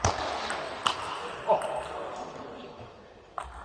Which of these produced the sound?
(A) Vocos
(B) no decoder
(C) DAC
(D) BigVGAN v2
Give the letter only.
B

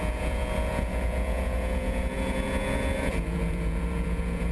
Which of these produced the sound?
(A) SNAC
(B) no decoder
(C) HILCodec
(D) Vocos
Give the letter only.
D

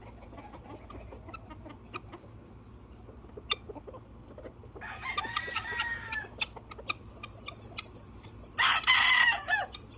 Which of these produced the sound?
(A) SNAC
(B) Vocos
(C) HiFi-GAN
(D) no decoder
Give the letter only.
D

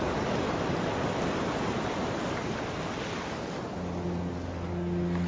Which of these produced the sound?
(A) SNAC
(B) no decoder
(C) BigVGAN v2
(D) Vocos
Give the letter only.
B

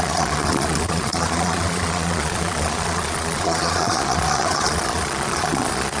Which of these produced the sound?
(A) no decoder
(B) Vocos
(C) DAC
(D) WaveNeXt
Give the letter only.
B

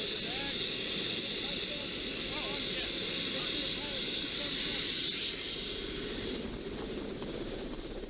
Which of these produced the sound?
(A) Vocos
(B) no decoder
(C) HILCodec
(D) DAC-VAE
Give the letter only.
B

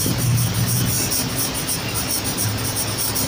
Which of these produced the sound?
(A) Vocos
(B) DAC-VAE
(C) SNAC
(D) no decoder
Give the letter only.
D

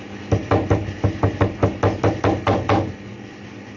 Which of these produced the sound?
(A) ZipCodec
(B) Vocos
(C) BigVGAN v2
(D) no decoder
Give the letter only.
D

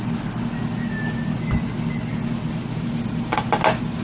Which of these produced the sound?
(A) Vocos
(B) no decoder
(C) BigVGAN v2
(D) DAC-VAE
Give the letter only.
B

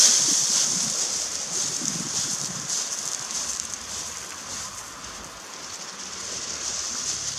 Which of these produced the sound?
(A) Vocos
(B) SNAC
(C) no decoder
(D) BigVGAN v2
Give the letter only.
C